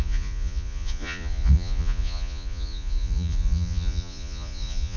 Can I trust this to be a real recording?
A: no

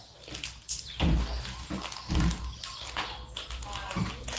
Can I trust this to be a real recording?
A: yes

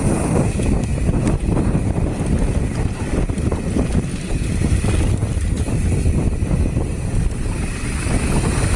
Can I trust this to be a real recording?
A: yes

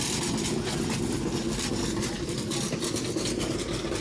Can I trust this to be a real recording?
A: yes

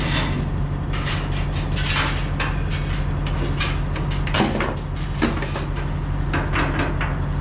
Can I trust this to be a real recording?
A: yes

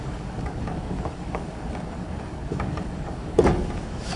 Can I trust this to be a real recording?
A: no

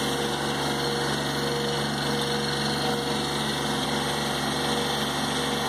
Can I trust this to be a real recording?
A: yes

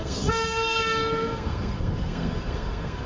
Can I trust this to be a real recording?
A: no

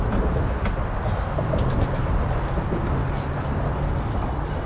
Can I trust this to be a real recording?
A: yes